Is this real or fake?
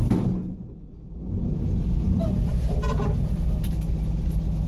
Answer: real